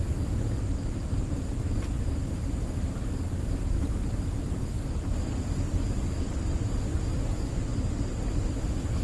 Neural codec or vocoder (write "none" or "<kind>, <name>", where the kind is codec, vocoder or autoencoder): none